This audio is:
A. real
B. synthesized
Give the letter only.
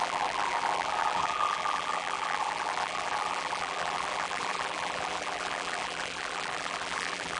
B